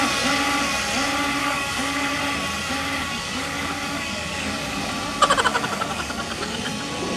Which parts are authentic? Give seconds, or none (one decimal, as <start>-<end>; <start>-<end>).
0.0-1.4; 2.2-3.0; 4.9-5.5; 6.6-7.2